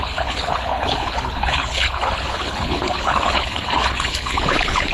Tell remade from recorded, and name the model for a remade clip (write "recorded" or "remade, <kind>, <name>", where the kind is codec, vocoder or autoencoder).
remade, codec, HILCodec